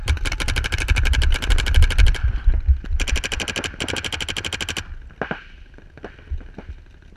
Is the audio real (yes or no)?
yes